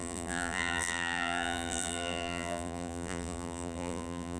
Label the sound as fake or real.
fake